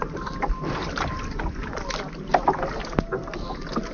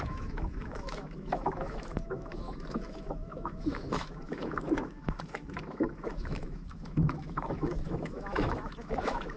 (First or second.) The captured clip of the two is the first